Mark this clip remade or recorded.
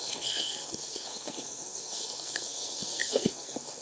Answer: remade